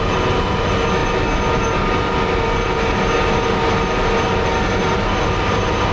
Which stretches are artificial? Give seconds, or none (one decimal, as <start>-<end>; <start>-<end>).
none